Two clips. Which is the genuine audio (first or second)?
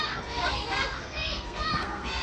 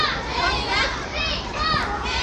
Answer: second